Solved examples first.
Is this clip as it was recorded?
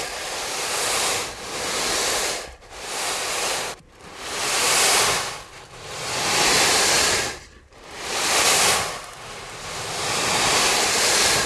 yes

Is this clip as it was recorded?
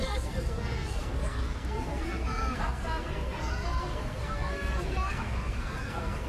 no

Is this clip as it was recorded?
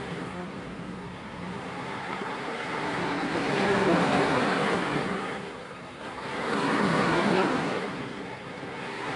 no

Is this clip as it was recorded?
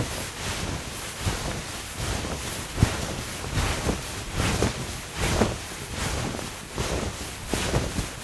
yes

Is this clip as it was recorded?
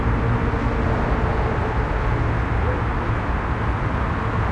yes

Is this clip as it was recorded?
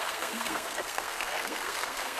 no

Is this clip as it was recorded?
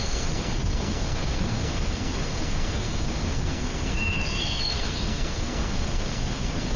no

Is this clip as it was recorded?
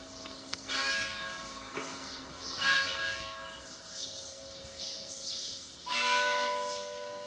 no